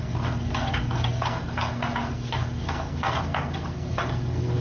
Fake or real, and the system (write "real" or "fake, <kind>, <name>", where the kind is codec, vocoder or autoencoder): fake, codec, SNAC